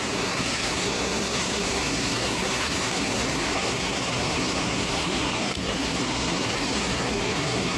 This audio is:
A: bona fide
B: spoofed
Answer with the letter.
B